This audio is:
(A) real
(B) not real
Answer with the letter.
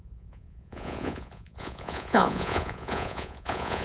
B